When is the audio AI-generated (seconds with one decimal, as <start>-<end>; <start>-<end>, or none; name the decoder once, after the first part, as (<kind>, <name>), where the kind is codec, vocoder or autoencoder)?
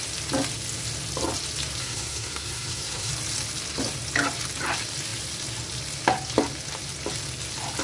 1.8-3.1 (codec, SNAC)